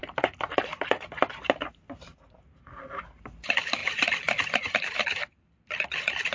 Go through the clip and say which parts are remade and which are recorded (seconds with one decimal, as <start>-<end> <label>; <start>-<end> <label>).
0.0-1.7 recorded; 1.7-3.8 remade; 3.8-4.7 recorded; 4.7-6.3 remade

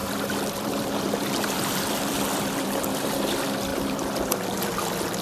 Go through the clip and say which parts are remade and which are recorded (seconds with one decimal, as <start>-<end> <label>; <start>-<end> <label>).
0.0-3.1 remade; 3.1-3.7 recorded; 3.7-4.3 remade; 4.3-5.2 recorded

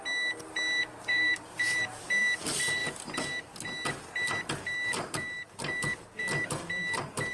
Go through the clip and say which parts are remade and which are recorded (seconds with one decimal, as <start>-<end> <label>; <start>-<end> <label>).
0.0-0.8 recorded; 0.8-2.2 remade; 2.2-7.3 recorded

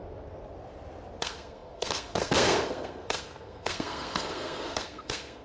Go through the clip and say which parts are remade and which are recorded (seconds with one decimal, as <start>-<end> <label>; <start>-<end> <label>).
0.0-1.2 recorded; 1.2-5.4 remade